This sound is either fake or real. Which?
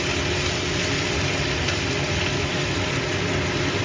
real